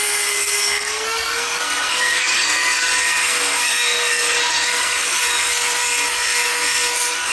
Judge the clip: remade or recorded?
remade